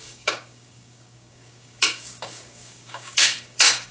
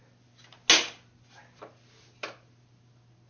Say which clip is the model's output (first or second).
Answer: first